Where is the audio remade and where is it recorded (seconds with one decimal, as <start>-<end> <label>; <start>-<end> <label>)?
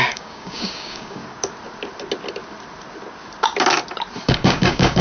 0.0-1.2 remade; 1.2-4.2 recorded; 4.2-5.0 remade